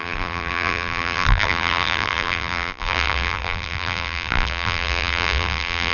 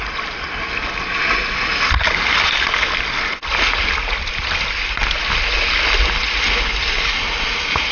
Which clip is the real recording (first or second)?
second